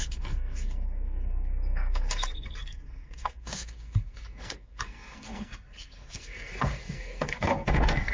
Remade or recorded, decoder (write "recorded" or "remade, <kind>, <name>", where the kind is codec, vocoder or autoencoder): remade, codec, SNAC